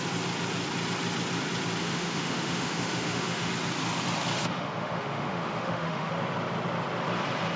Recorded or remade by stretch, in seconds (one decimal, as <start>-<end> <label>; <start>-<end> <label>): 0.0-1.8 recorded; 1.8-3.5 remade; 3.5-4.3 recorded; 4.3-6.1 remade; 6.1-7.6 recorded